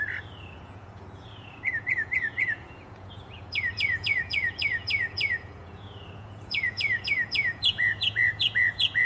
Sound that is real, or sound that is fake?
fake